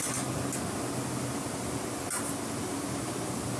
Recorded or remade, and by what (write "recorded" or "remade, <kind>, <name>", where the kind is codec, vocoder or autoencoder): recorded